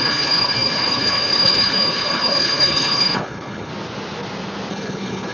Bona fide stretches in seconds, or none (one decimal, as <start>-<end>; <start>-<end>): 3.7-4.7